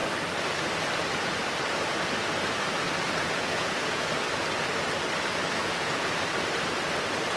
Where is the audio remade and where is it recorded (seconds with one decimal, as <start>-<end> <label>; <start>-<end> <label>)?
0.0-3.2 recorded; 3.2-4.1 remade; 4.1-5.6 recorded; 5.6-6.2 remade; 6.2-7.4 recorded